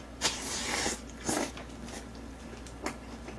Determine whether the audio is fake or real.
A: real